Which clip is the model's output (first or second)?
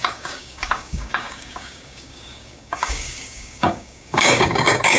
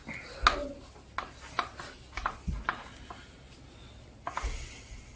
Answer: first